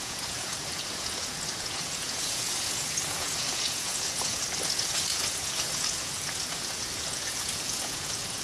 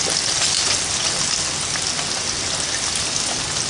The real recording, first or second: second